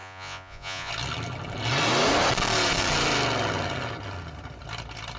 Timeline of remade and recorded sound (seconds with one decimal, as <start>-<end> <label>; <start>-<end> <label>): 0.0-0.9 remade; 0.9-5.2 recorded